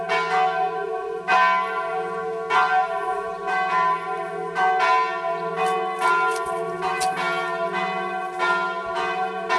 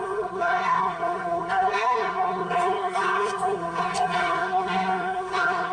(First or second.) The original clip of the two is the first